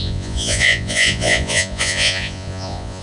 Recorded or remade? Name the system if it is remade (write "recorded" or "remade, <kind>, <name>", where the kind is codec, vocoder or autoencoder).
remade, vocoder, Vocos